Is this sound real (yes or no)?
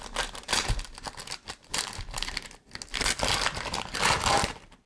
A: yes